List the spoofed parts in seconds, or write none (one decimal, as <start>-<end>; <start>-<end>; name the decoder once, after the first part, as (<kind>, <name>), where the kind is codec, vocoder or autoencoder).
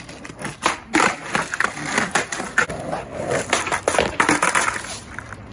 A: none